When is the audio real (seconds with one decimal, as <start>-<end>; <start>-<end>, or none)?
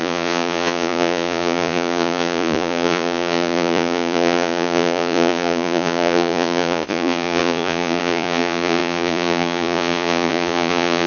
none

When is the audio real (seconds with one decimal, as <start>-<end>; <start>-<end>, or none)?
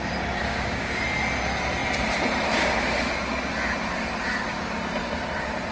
0.0-0.4; 1.0-5.7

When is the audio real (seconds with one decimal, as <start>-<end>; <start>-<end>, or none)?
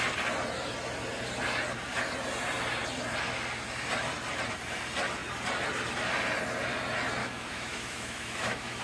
0.0-7.2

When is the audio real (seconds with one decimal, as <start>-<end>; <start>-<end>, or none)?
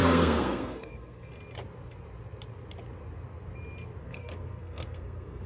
1.3-4.0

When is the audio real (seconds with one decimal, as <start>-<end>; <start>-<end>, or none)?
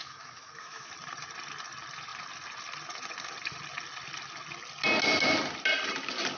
0.9-6.4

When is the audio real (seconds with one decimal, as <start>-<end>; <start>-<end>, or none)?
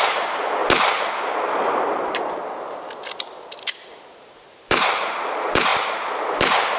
0.6-4.7; 5.7-6.2